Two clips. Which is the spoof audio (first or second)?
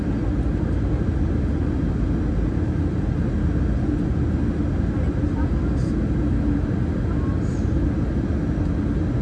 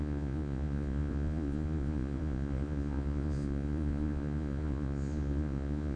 second